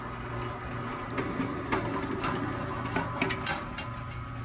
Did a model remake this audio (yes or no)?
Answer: no